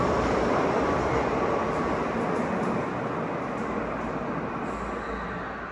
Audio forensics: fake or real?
real